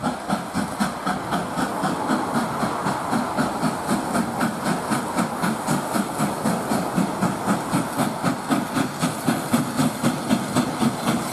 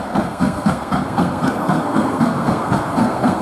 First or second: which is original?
first